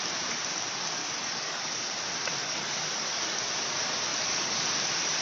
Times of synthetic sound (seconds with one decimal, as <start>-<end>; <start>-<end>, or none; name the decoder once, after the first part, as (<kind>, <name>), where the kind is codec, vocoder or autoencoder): 1.0-1.9 (codec, DAC); 2.4-3.5; 4.1-4.7